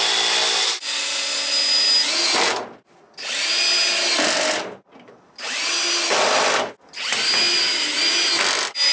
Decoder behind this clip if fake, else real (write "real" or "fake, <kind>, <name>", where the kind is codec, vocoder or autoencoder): real